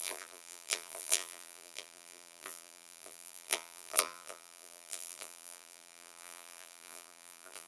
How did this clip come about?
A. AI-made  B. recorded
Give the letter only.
A